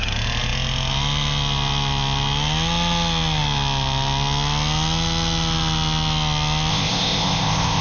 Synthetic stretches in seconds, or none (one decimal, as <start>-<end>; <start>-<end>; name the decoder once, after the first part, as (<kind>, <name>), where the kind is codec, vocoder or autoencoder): 6.7-7.8 (codec, ZipCodec)